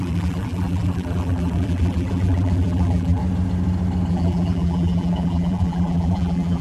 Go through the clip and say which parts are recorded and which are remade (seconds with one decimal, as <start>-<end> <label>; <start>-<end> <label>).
0.0-3.2 remade; 3.2-4.1 recorded; 4.1-6.6 remade